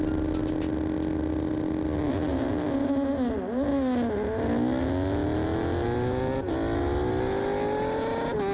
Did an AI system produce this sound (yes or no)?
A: no